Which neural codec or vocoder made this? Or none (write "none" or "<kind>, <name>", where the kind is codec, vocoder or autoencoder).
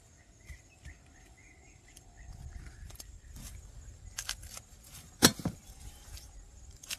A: vocoder, BigVGAN v2